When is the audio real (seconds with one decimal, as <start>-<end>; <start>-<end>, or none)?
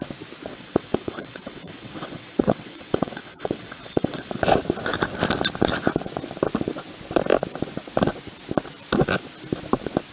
0.0-0.5; 4.3-10.1